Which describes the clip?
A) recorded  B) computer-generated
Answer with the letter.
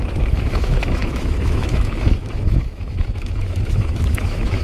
B